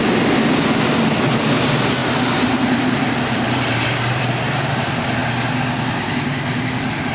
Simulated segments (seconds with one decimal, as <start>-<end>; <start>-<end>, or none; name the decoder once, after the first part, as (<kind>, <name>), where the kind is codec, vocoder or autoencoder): 2.0-4.2 (vocoder, BigVGAN v2)